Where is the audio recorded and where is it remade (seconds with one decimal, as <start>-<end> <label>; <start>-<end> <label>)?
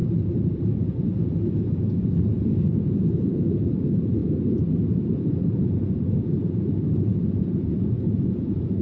0.0-0.6 recorded; 0.6-8.8 remade